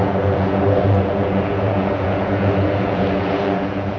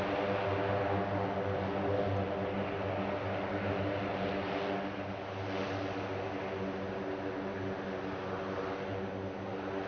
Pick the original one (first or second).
second